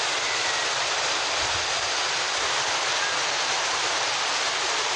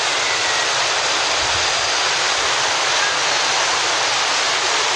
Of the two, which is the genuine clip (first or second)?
second